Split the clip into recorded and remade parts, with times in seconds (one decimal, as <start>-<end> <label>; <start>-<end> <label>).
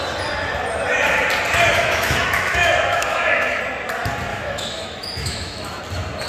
0.0-1.7 recorded; 1.7-3.6 remade; 3.6-4.3 recorded; 4.3-5.8 remade; 5.8-6.3 recorded